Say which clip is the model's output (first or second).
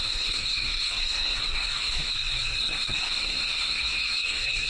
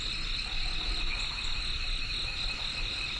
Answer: first